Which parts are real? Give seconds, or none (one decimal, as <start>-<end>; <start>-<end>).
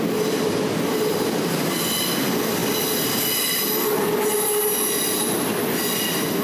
0.0-6.4